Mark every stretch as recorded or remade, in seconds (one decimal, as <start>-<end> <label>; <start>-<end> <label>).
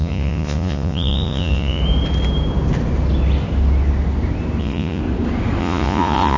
0.0-1.8 remade; 1.8-4.6 recorded; 4.6-5.0 remade; 5.0-5.6 recorded; 5.6-6.4 remade